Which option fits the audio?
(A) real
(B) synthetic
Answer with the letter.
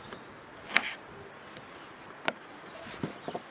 A